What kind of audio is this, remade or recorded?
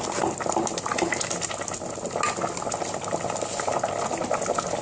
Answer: recorded